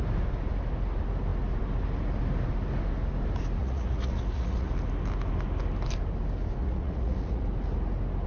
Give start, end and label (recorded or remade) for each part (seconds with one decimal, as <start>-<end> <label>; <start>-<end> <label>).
0.0-3.6 recorded; 3.6-4.7 remade; 4.7-6.6 recorded; 6.6-7.4 remade; 7.4-8.3 recorded